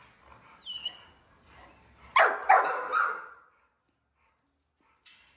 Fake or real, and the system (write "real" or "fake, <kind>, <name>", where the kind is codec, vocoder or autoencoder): real